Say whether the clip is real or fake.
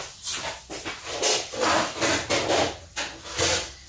real